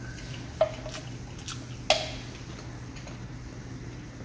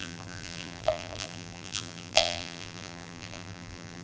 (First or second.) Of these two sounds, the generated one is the second